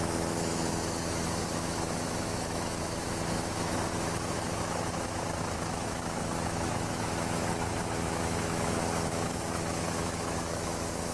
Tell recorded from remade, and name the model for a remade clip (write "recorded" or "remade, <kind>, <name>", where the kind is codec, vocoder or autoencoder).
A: remade, autoencoder, DAC-VAE